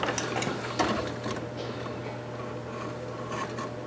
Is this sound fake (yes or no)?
no